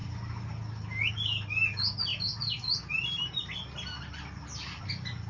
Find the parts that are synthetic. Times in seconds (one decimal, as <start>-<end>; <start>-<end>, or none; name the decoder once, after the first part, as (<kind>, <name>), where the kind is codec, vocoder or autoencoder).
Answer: none